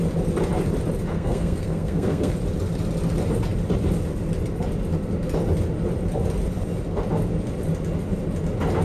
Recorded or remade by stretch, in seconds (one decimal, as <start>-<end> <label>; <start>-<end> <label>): 0.0-1.1 recorded; 1.1-2.3 remade; 2.3-8.8 recorded